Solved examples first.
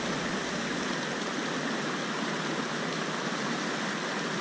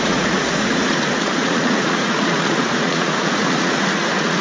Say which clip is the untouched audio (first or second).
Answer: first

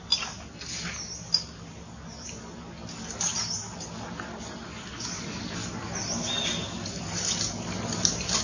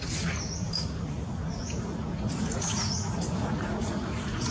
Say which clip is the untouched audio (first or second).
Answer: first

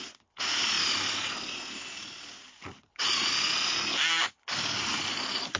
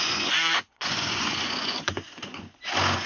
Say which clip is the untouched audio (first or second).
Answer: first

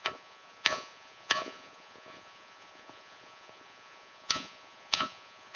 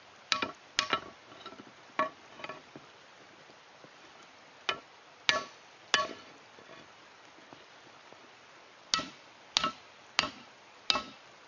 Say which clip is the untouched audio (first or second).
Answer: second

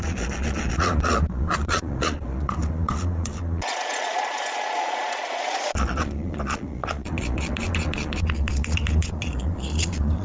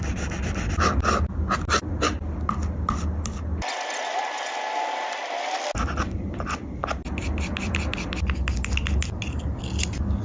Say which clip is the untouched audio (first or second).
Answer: second